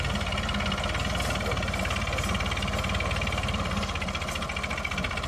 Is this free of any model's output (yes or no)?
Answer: yes